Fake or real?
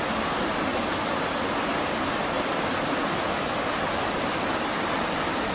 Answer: real